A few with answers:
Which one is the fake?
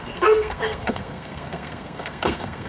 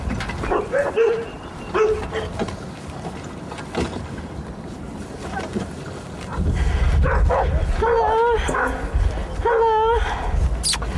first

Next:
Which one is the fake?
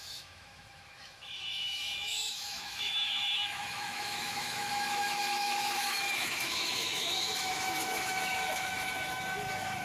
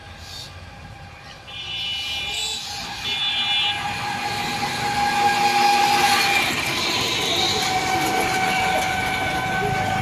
first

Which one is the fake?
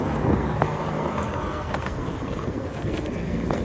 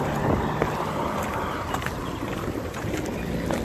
first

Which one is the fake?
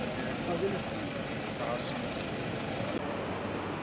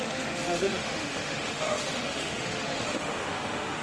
second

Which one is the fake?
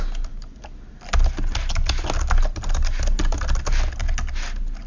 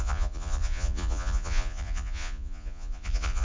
second